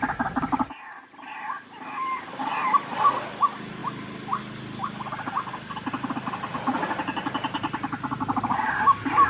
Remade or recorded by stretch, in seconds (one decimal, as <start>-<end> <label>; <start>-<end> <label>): 0.0-9.3 recorded